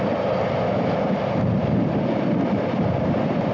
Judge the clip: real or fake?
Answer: real